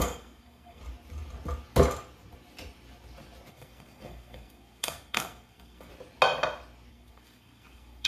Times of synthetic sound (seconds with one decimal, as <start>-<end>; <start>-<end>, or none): 0.0-0.8; 3.5-5.9; 6.9-8.1